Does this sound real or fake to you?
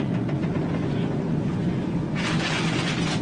fake